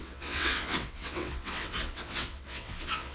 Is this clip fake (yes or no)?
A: yes